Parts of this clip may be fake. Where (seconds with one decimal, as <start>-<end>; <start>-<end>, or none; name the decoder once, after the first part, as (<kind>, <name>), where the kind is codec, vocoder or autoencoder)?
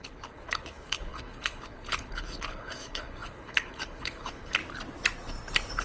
0.0-4.6 (codec, HILCodec)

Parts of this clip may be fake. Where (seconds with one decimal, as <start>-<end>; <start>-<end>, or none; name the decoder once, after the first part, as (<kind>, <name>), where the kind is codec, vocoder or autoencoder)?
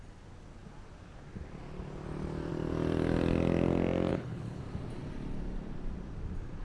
4.1-4.6 (codec, HILCodec)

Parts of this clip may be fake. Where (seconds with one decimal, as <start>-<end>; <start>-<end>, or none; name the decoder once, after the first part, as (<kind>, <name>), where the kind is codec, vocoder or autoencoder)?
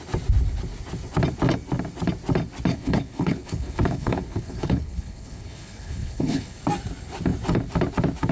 2.7-6.6 (codec, HILCodec)